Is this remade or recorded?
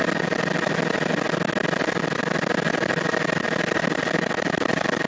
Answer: recorded